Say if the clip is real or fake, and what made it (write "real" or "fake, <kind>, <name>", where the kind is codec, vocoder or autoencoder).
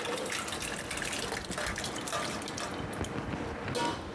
real